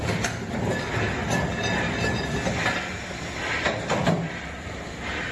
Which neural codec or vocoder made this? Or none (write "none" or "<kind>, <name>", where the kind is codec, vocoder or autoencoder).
none